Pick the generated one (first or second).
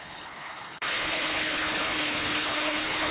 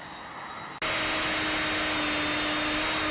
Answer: first